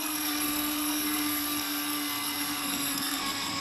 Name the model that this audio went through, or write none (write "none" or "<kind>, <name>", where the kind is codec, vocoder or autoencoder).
codec, SNAC